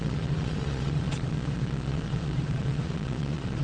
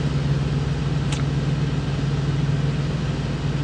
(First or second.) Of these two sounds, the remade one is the first